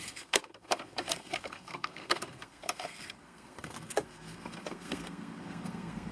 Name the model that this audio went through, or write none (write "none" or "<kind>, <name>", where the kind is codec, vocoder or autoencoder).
codec, SNAC